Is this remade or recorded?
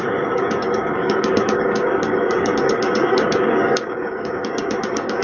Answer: remade